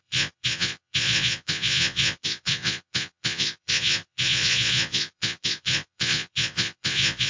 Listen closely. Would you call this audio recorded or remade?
remade